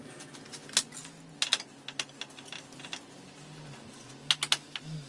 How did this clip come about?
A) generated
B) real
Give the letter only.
B